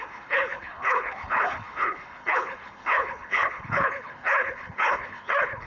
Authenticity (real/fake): fake